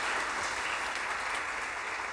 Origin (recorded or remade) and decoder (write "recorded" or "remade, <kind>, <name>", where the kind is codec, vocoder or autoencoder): recorded